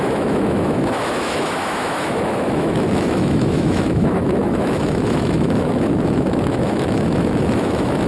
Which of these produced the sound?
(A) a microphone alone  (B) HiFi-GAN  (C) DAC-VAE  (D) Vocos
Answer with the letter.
C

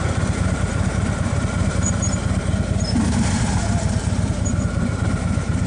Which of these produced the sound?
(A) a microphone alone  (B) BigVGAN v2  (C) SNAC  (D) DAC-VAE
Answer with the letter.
B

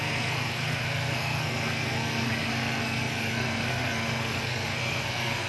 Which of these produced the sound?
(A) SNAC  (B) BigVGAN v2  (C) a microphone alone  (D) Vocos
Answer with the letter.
A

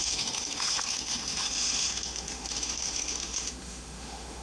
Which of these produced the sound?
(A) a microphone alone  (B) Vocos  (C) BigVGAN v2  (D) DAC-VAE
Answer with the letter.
D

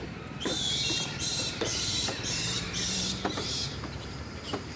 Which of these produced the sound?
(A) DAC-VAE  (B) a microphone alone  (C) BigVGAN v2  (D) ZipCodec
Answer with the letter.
C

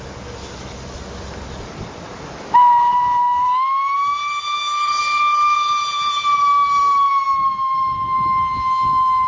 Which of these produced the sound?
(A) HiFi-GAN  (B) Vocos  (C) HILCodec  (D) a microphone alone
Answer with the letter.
D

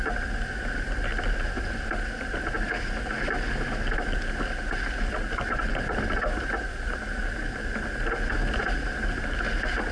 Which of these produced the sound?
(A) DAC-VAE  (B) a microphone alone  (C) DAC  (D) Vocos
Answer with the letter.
B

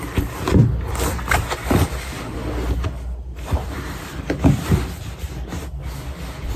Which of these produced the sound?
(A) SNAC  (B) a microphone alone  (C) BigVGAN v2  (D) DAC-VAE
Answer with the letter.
B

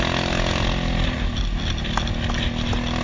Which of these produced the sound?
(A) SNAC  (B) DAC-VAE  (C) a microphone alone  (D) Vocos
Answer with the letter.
C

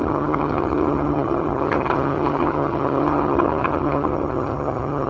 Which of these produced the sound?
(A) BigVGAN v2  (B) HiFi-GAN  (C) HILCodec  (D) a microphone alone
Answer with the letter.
B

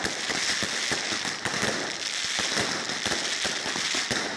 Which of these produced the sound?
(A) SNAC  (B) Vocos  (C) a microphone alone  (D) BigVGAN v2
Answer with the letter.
C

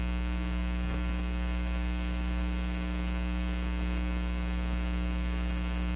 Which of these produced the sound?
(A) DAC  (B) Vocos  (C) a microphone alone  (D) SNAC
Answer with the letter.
A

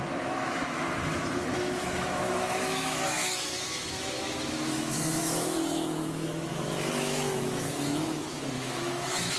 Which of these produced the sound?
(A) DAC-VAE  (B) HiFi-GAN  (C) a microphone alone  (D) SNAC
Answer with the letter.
A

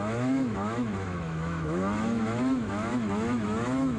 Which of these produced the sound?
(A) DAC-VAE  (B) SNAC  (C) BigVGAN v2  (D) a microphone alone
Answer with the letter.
A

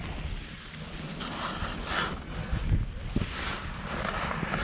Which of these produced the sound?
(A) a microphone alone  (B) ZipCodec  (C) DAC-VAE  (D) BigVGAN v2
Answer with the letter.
A